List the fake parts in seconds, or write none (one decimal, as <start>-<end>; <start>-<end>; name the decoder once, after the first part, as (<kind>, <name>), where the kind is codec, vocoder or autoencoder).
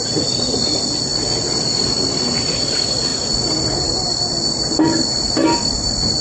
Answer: none